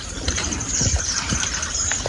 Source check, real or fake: fake